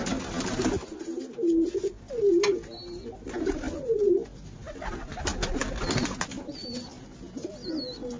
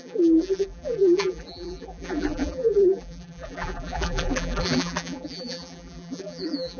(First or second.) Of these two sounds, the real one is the first